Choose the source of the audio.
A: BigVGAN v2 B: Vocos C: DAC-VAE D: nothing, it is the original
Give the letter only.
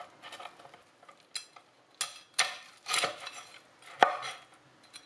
D